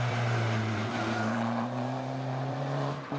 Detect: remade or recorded remade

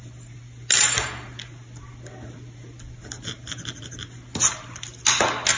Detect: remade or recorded recorded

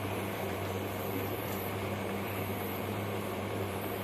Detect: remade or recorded remade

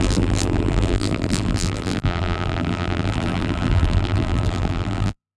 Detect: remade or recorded remade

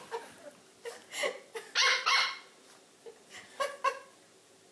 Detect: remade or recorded recorded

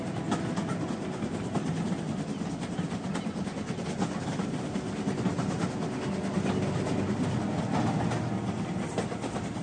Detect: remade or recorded recorded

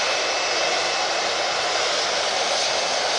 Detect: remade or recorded remade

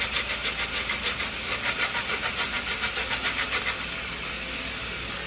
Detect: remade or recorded recorded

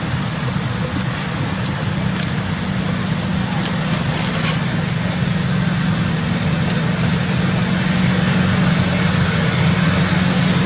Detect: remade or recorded recorded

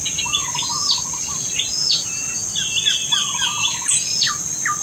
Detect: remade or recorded recorded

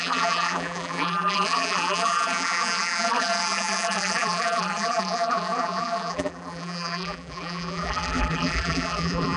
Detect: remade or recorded remade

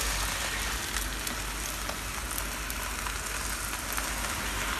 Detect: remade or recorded recorded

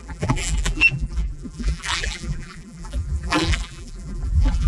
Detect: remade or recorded remade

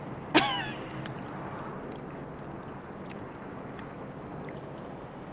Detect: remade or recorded recorded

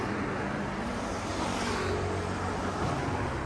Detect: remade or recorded recorded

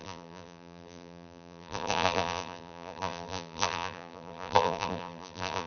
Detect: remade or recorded remade